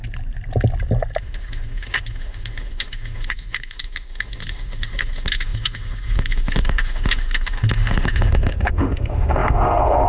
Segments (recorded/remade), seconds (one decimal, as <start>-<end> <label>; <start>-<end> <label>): 0.0-1.2 recorded; 1.2-10.1 remade